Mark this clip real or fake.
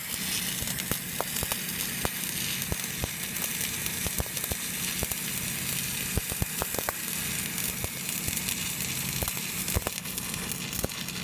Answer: real